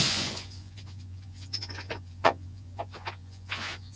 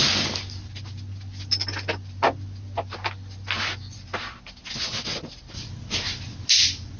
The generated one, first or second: first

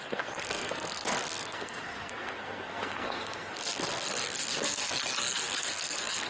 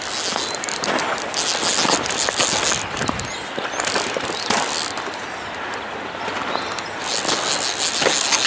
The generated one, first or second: first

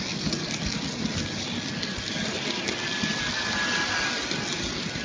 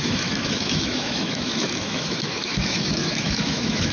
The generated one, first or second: second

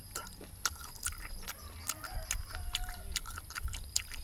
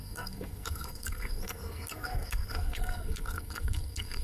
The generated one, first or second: second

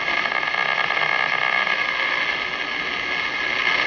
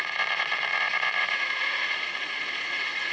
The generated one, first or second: second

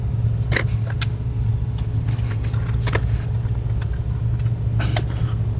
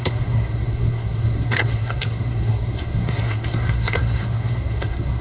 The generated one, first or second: second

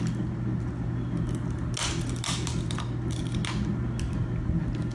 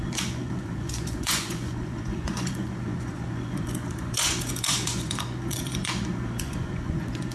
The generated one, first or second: second